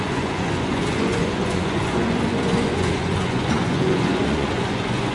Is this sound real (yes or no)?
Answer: no